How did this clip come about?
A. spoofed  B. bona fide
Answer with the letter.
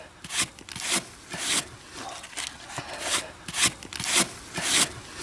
B